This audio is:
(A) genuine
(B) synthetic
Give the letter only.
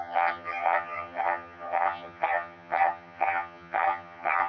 B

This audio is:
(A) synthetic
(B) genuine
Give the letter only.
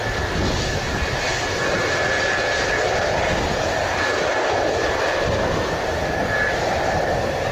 A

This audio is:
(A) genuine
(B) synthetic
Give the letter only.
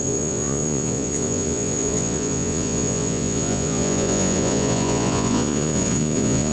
B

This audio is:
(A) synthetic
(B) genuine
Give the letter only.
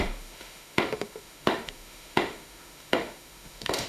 A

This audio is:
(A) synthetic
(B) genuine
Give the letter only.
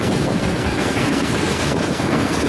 A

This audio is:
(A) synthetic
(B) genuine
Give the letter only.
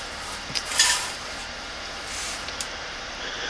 A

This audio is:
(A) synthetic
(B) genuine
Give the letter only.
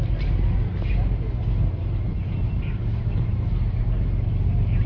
B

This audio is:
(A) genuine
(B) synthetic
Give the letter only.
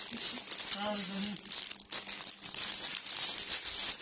A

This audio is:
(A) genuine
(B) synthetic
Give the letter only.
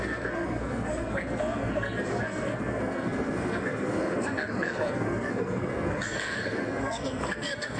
B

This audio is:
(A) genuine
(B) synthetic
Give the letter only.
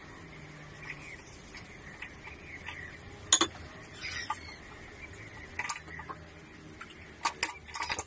A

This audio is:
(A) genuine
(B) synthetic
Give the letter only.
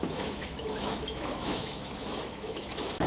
B